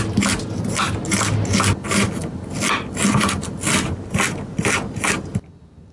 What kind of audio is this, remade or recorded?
recorded